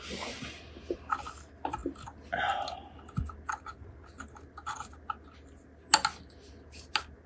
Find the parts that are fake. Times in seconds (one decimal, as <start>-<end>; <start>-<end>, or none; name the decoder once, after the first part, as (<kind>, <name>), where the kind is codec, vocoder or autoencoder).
none